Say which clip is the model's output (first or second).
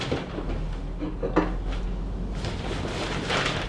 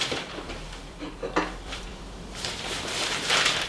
second